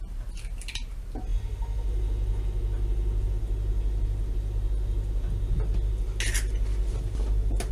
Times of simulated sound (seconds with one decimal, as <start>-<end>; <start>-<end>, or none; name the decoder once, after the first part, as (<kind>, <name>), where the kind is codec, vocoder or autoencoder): none